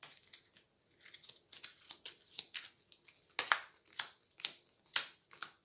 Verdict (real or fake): real